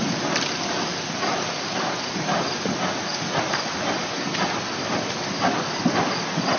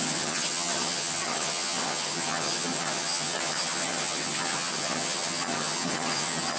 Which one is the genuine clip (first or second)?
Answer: first